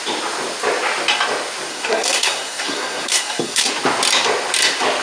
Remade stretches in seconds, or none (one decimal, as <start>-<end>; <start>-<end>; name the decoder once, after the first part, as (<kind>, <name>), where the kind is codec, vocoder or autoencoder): 1.7-3.7 (codec, SNAC)